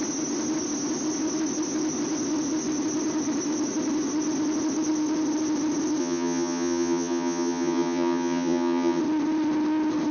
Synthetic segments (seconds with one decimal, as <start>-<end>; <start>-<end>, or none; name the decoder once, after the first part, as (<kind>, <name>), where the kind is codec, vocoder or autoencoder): 6.0-9.0 (vocoder, HiFi-GAN)